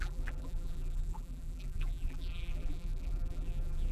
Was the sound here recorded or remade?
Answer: remade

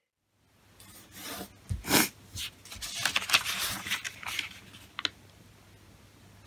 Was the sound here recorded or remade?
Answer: recorded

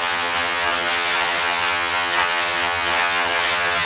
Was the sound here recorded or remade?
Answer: remade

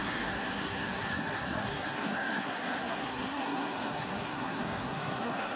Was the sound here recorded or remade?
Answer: remade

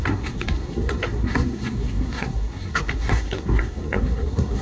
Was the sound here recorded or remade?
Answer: remade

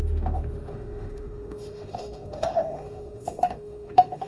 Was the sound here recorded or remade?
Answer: remade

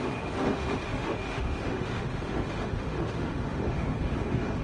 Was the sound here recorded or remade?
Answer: remade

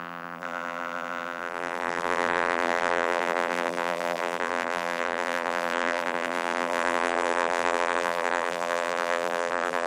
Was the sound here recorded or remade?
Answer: remade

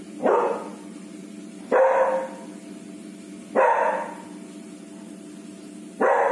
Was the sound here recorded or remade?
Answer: recorded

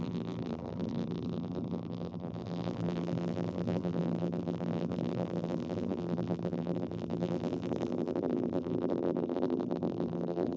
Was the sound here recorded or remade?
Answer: remade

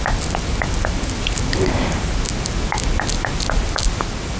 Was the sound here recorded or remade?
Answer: recorded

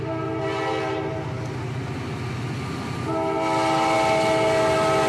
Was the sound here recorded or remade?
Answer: recorded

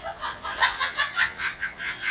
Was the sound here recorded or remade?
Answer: remade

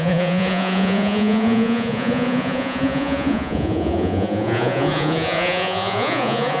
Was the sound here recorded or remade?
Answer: remade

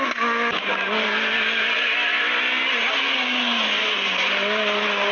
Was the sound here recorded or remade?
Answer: recorded